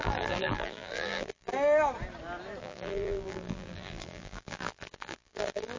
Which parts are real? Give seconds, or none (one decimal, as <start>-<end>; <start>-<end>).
1.5-2.6